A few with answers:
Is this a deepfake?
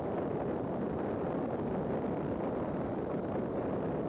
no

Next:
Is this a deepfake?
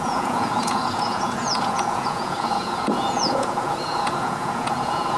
yes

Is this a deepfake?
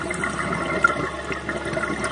no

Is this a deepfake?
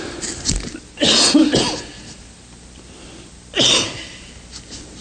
no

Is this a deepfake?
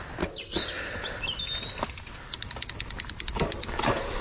no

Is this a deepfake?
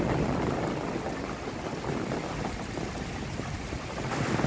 no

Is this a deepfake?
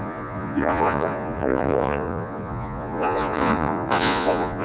yes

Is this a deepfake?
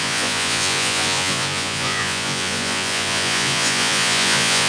yes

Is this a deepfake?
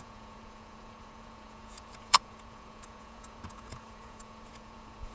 yes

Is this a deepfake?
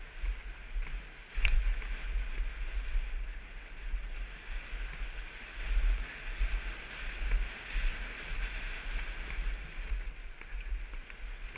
no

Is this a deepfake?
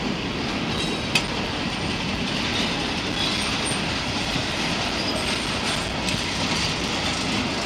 no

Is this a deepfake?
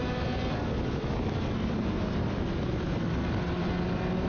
no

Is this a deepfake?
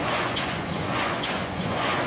yes